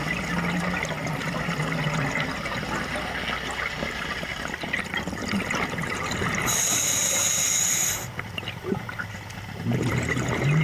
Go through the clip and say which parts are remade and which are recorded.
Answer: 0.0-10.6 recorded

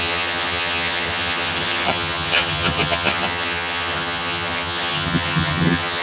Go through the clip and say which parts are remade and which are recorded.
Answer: 0.0-6.0 remade

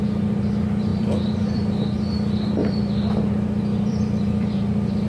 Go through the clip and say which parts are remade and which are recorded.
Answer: 0.0-0.9 recorded; 0.9-1.7 remade; 1.7-2.6 recorded; 2.6-3.3 remade; 3.3-3.7 recorded; 3.7-5.1 remade

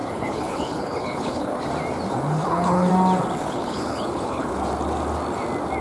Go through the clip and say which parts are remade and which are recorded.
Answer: 0.0-1.6 remade; 1.6-2.4 recorded; 2.4-2.9 remade; 2.9-3.4 recorded; 3.4-4.5 remade; 4.5-5.8 recorded

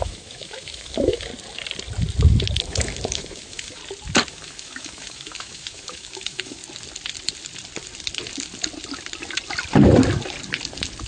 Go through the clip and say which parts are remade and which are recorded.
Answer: 0.0-1.3 remade; 1.3-2.6 recorded; 2.6-3.8 remade; 3.8-4.3 recorded; 4.3-6.6 remade; 6.6-11.1 recorded

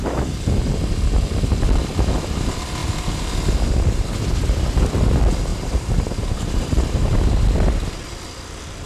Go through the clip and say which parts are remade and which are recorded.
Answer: 0.0-5.5 recorded; 5.5-7.1 remade; 7.1-8.9 recorded

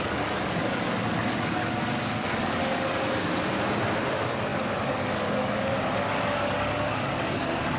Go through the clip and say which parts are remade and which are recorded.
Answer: 0.0-2.6 remade; 2.6-4.1 recorded; 4.1-7.8 remade